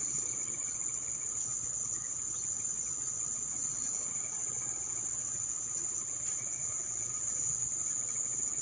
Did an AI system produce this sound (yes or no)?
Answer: yes